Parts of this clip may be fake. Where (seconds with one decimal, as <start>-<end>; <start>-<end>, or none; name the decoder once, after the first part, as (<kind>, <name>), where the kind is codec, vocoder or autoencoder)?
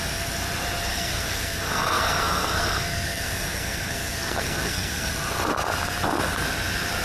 0.9-5.1 (codec, SNAC)